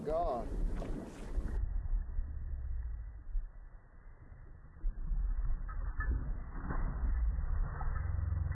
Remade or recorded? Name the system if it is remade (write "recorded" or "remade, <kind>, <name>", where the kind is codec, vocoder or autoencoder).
recorded